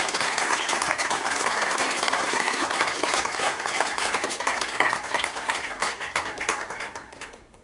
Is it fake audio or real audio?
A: fake